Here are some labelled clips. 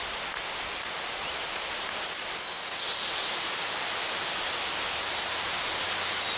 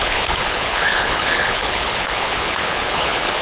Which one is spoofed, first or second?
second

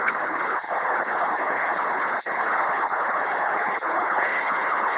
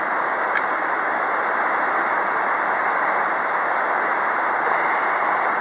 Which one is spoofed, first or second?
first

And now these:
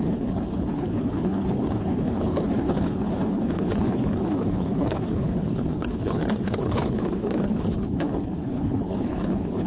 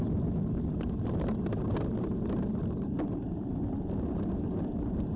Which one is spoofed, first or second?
first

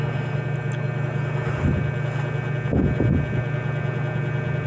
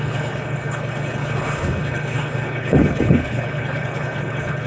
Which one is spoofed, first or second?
second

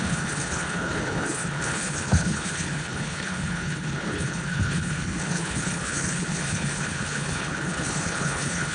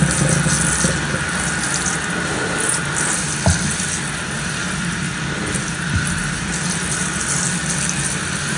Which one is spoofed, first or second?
first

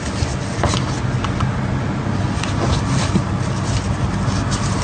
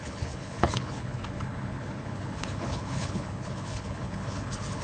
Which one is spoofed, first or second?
second